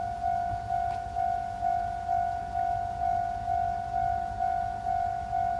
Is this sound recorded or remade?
remade